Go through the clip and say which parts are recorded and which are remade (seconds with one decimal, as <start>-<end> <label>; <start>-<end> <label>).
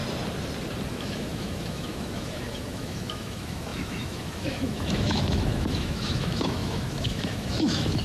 0.0-0.9 recorded; 0.9-8.0 remade